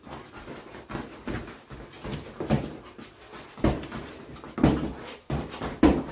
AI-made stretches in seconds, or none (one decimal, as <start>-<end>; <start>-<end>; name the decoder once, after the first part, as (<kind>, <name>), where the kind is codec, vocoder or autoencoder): 2.1-2.8 (vocoder, BigVGAN v2)